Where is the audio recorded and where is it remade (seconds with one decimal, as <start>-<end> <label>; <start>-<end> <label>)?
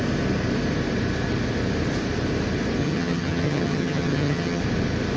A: 0.0-2.8 recorded; 2.8-4.6 remade; 4.6-5.2 recorded